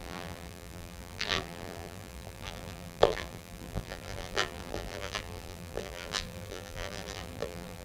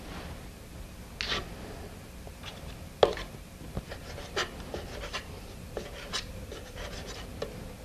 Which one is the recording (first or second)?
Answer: second